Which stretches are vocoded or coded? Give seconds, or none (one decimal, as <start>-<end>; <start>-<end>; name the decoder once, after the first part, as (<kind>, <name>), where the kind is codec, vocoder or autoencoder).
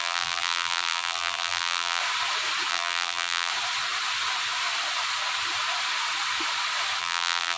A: 0.0-2.0 (vocoder, BigVGAN v2); 2.7-3.5; 7.0-7.6